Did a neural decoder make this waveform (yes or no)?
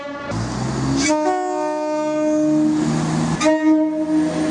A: no